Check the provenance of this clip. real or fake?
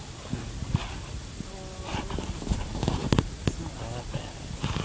real